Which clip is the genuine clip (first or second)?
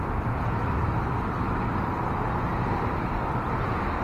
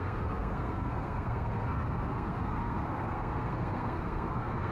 first